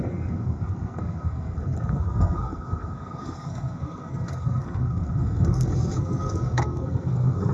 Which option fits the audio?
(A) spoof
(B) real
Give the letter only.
A